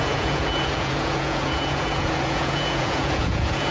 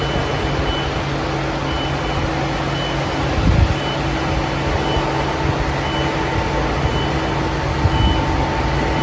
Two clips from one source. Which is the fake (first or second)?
first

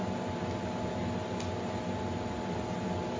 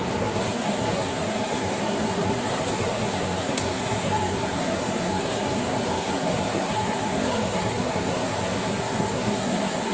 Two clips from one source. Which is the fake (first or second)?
second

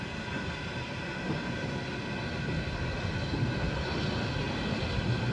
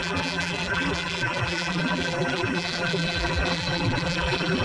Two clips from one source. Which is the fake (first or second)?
second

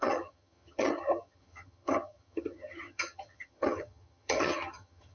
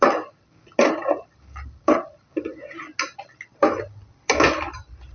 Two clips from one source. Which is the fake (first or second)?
first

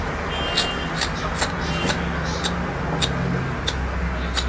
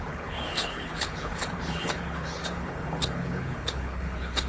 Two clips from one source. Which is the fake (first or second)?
second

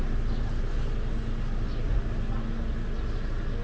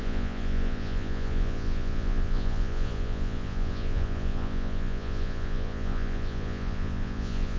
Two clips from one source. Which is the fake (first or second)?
second